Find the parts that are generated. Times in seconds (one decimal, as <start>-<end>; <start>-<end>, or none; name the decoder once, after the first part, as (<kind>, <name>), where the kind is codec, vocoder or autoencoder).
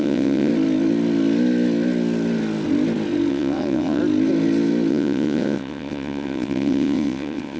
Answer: 0.0-0.5 (vocoder, WaveNeXt); 3.3-4.0; 4.9-7.6